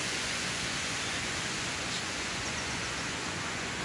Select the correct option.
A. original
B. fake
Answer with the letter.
B